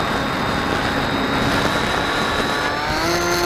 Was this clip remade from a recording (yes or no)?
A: no